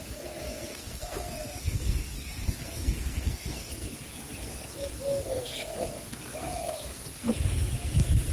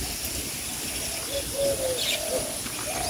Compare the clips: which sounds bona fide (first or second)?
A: second